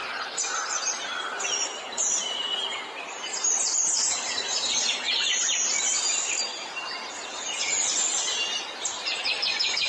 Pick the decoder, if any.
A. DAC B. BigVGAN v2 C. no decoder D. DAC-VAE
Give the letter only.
B